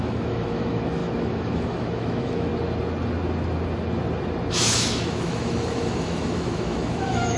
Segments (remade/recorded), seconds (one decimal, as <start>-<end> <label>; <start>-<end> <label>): 0.0-2.5 remade; 2.5-4.5 recorded; 4.5-7.4 remade